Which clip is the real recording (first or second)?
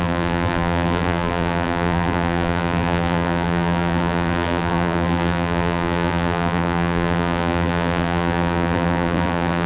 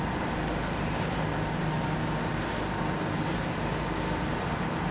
second